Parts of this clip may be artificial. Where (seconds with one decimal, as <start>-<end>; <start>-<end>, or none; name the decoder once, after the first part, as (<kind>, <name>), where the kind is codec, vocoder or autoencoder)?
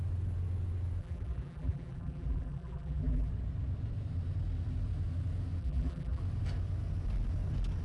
1.0-3.3 (vocoder, BigVGAN v2); 5.6-6.2